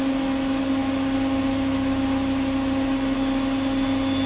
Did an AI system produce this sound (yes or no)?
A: no